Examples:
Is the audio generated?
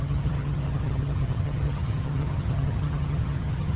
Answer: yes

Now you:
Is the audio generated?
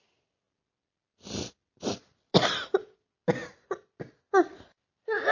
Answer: no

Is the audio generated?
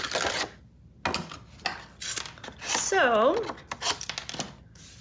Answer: no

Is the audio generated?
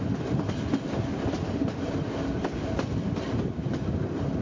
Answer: no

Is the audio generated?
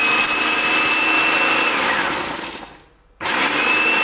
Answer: no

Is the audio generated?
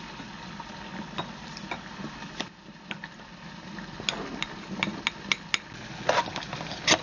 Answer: no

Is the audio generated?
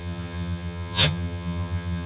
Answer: yes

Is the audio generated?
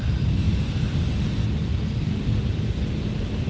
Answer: no